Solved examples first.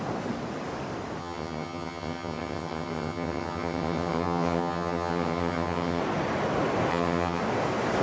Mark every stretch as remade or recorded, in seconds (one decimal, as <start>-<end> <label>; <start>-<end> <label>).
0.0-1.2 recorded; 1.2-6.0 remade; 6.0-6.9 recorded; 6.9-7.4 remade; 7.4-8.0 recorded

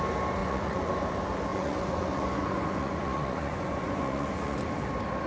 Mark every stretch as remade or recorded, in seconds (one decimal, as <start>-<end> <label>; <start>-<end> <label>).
0.0-0.4 recorded; 0.4-0.9 remade; 0.9-1.5 recorded; 1.5-4.7 remade; 4.7-5.3 recorded

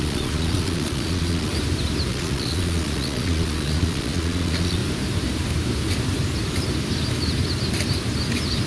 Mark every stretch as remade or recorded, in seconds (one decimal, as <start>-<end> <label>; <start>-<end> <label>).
0.0-1.5 remade; 1.5-2.1 recorded; 2.1-4.8 remade; 4.8-8.7 recorded

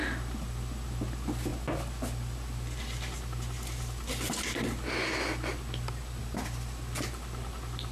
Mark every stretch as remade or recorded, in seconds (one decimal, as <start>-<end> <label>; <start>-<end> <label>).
0.0-7.9 recorded

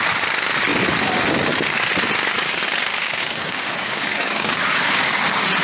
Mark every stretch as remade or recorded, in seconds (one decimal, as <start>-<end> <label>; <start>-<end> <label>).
0.0-2.9 recorded; 2.9-4.6 remade; 4.6-5.6 recorded

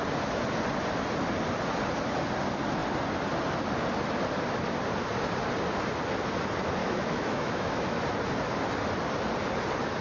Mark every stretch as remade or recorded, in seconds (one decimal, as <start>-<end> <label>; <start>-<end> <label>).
0.0-6.8 recorded; 6.8-8.0 remade; 8.0-10.0 recorded